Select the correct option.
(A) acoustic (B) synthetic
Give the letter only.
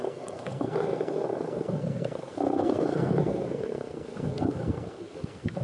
B